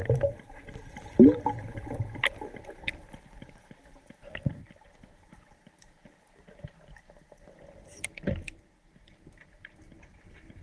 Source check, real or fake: real